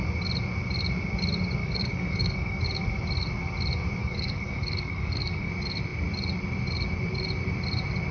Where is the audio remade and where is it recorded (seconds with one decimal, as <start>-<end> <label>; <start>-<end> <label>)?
0.0-1.6 recorded; 1.6-2.6 remade; 2.6-4.0 recorded; 4.0-5.5 remade; 5.5-8.1 recorded